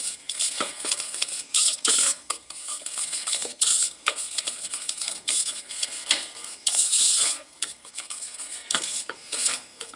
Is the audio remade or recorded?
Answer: remade